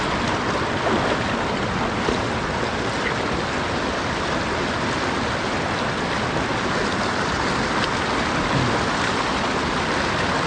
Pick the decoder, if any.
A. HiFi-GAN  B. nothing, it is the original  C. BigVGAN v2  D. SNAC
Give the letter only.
B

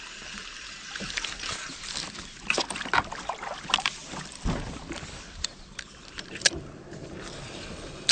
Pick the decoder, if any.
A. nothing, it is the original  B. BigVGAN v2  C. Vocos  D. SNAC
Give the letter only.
B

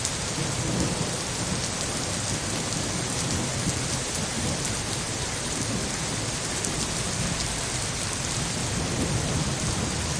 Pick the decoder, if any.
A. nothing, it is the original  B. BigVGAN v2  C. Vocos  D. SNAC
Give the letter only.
A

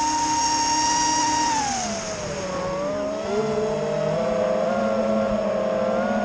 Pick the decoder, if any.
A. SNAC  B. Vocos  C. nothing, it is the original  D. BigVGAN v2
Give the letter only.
C